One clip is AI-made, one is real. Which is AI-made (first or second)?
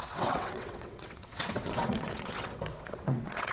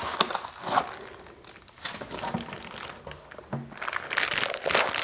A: first